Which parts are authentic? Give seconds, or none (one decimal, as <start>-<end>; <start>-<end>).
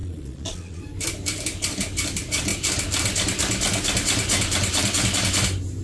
0.8-5.8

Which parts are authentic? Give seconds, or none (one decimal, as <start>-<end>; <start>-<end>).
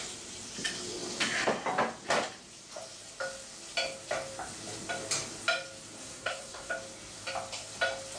0.0-6.0; 6.7-8.2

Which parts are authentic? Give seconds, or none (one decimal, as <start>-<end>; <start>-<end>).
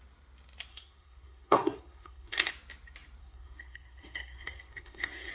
0.0-0.7; 2.5-3.2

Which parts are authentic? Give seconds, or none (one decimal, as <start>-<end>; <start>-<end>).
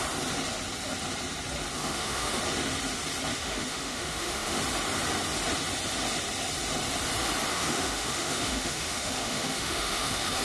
0.0-1.8; 2.4-3.3; 4.6-7.5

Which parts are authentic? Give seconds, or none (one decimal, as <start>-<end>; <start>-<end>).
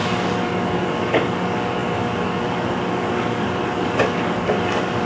none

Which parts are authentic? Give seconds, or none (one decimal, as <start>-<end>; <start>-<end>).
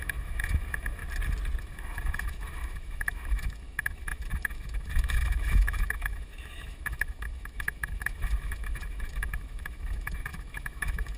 1.0-1.6